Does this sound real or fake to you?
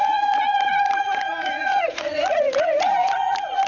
fake